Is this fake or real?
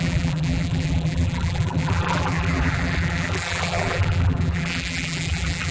fake